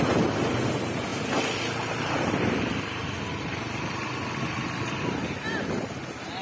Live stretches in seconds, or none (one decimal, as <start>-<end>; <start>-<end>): 0.0-1.1; 4.9-6.4